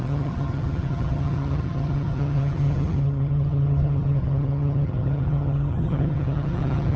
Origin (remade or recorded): remade